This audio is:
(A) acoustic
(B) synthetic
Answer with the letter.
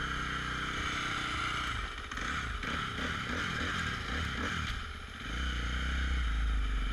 A